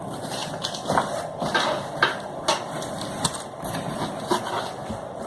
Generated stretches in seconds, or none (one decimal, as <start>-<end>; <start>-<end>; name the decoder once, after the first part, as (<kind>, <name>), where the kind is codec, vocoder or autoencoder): none